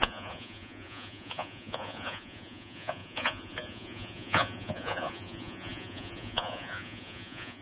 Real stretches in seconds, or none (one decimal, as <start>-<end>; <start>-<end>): none